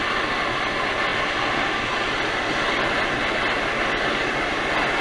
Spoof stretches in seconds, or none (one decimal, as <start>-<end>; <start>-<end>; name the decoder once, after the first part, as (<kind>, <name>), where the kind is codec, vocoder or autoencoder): none